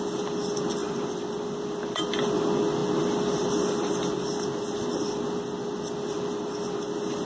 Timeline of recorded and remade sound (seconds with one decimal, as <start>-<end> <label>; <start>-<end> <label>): 0.0-7.2 recorded